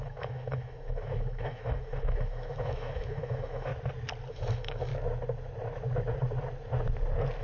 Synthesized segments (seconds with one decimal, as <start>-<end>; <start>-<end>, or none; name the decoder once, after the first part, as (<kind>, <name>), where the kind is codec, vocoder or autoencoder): 0.0-3.7 (autoencoder, DAC-VAE); 4.3-4.9